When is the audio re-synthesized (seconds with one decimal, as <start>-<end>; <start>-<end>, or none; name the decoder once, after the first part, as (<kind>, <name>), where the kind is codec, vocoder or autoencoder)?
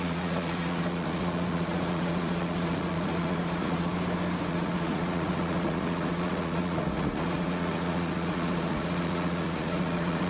0.0-3.9 (vocoder, Vocos); 4.5-10.3